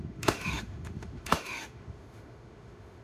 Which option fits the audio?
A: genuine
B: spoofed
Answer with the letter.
B